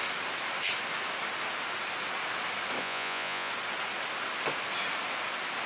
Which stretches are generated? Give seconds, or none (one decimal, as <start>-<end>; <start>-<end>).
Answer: 2.8-3.5